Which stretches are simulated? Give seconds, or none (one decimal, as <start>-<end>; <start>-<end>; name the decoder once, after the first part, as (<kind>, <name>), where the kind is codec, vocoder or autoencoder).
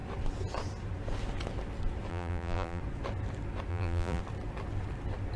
2.1-2.8 (vocoder, BigVGAN v2); 3.7-4.2